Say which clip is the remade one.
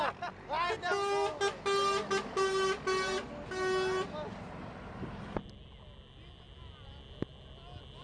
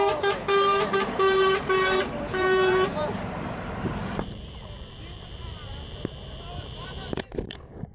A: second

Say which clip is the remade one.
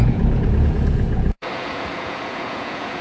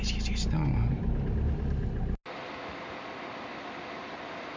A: first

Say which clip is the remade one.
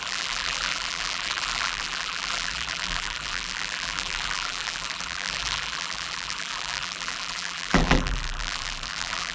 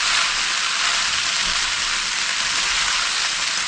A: first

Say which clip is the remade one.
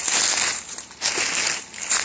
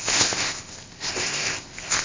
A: second